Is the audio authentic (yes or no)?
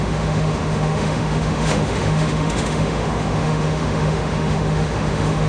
no